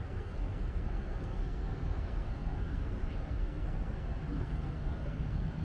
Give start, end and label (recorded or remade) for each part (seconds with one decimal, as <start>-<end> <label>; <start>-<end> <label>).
0.0-5.6 remade